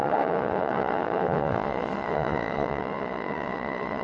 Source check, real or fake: fake